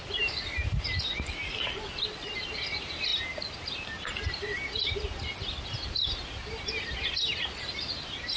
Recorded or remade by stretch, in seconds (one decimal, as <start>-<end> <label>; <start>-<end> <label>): 0.0-8.4 recorded